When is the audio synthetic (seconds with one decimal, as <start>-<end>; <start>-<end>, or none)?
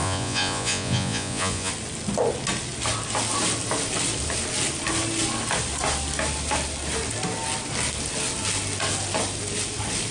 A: 0.0-1.7